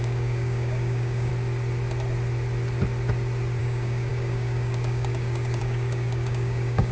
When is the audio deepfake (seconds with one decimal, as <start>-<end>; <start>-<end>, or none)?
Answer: 0.0-1.3; 3.6-6.9